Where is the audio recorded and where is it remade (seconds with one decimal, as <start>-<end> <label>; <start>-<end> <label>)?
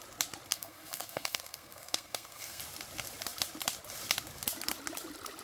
0.0-0.5 recorded; 0.5-2.6 remade; 2.6-5.4 recorded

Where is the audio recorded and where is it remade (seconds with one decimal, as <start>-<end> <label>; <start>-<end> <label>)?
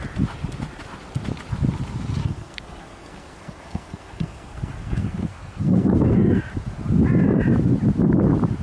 0.0-2.2 recorded; 2.2-6.4 remade; 6.4-8.6 recorded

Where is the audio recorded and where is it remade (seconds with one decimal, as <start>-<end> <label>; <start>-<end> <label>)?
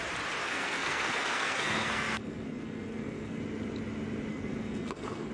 0.0-0.4 recorded; 0.4-3.4 remade; 3.4-4.3 recorded; 4.3-5.3 remade